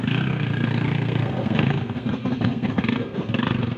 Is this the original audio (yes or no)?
no